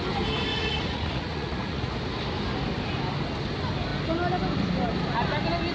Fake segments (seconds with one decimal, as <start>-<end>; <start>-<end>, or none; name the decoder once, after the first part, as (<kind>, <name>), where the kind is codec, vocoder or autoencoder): 0.5-1.9 (vocoder, Vocos)